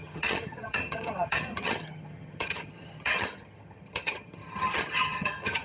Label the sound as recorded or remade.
remade